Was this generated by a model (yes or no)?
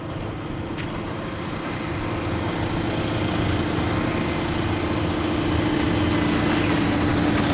no